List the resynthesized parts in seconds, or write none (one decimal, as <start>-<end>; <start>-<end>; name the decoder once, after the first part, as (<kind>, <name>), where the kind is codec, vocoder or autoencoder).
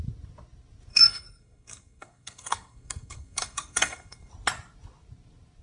0.9-4.3 (codec, SNAC)